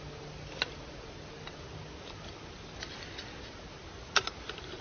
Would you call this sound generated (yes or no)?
no